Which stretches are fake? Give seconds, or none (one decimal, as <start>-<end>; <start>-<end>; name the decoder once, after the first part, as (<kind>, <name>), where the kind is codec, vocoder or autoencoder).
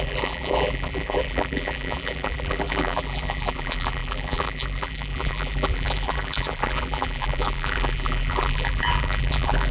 0.0-9.7 (vocoder, BigVGAN v2)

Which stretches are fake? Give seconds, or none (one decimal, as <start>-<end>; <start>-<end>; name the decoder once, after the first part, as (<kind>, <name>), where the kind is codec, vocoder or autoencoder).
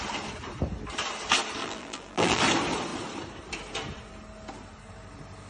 1.6-2.4 (vocoder, BigVGAN v2)